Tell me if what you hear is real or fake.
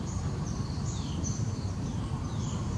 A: fake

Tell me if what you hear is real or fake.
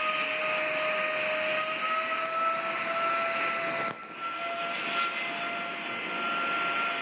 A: real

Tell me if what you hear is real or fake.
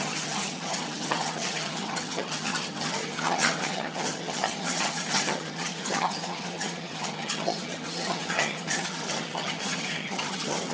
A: fake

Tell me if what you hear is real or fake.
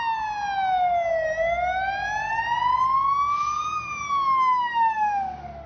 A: real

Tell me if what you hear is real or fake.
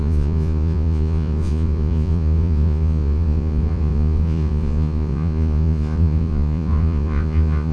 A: fake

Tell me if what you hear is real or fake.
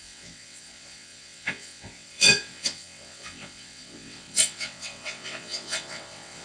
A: fake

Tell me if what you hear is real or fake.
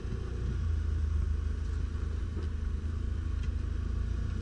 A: real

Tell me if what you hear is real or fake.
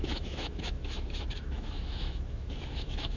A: fake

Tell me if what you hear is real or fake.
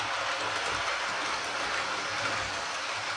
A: real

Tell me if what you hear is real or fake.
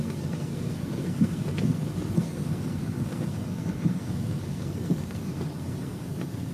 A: fake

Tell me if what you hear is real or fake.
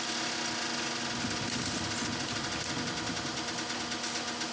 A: real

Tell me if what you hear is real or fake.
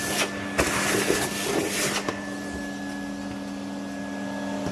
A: real